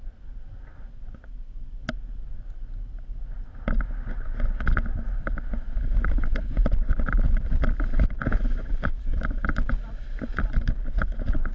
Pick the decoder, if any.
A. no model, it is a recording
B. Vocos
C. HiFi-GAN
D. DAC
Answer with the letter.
A